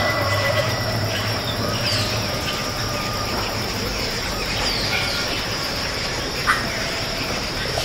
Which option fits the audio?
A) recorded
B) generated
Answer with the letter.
B